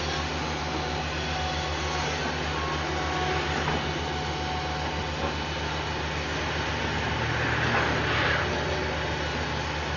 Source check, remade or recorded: recorded